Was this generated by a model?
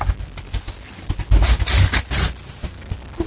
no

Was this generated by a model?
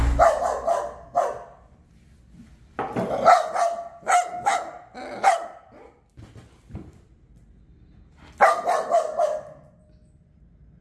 no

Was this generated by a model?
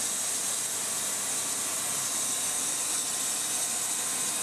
no